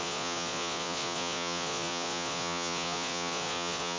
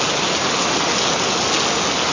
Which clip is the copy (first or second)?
first